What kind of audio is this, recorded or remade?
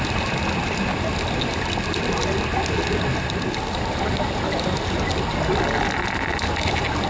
recorded